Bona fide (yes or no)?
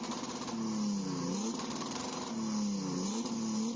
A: yes